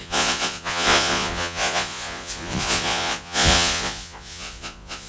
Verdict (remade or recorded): remade